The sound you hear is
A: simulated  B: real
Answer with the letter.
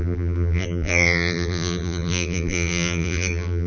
A